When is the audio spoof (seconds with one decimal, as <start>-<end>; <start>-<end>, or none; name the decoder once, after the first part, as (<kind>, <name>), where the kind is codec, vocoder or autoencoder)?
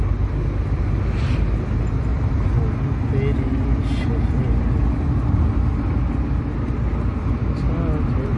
2.1-2.7 (vocoder, BigVGAN v2)